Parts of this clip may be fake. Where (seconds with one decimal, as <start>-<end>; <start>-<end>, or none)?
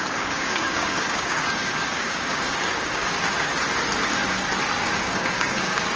0.0-3.5; 4.8-6.0